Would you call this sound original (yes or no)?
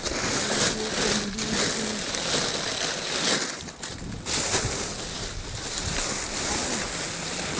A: yes